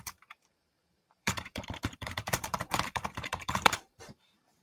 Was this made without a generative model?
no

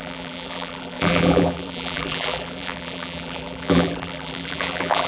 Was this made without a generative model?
no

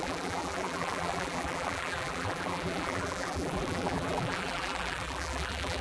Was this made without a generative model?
no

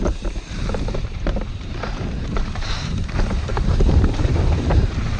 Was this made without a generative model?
no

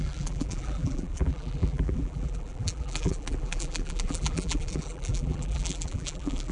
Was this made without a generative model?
no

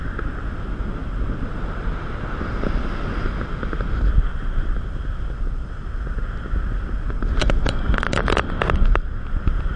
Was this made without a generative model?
yes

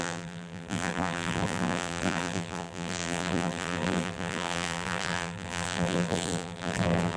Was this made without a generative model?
no